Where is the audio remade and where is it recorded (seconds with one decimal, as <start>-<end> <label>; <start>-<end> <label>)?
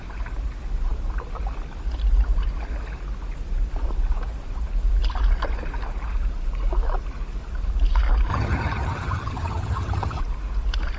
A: 0.0-8.3 recorded; 8.3-10.2 remade; 10.2-11.0 recorded